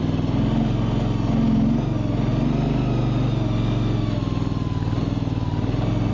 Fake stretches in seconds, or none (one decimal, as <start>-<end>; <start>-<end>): none